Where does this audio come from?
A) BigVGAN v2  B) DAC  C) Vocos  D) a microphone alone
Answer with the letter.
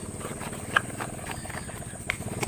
D